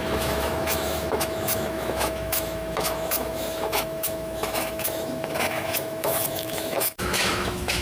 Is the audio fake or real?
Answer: fake